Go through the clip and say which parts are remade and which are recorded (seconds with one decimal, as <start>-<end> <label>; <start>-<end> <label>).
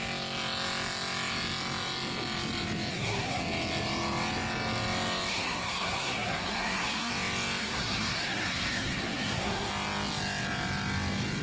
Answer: 0.0-2.9 recorded; 2.9-3.4 remade; 3.4-5.3 recorded; 5.3-7.1 remade; 7.1-7.6 recorded; 7.6-9.7 remade; 9.7-11.4 recorded